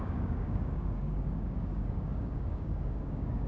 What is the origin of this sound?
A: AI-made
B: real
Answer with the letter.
A